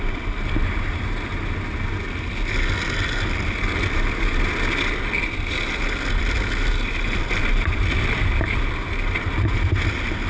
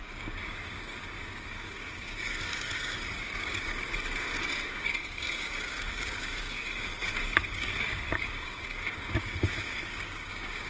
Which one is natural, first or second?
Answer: first